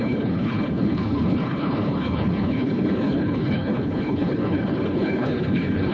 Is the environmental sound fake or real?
fake